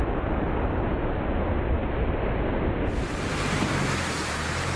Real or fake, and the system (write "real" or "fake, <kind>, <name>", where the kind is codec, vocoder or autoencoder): real